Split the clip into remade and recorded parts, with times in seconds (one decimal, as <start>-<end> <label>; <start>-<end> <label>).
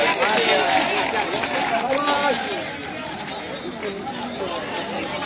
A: 0.0-5.3 recorded